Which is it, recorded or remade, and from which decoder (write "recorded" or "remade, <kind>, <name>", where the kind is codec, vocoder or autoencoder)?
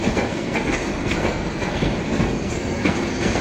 remade, codec, SNAC